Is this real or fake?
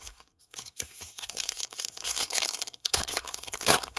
fake